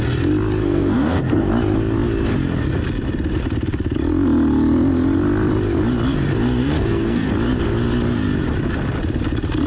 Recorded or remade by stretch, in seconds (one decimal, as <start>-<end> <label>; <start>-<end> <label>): 0.0-0.6 recorded; 0.6-1.5 remade; 1.5-6.6 recorded; 6.6-7.3 remade; 7.3-9.7 recorded